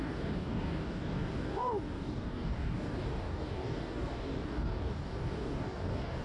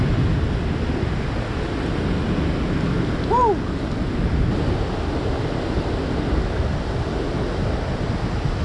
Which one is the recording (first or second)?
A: second